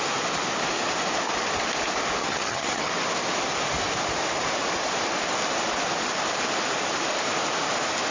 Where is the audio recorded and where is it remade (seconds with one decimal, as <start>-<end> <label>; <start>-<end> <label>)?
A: 0.0-2.2 recorded; 2.2-2.9 remade; 2.9-8.1 recorded